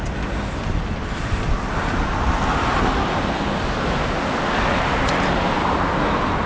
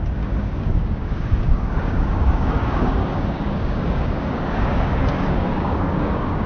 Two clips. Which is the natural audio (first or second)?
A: first